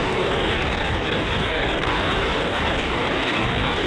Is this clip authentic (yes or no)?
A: no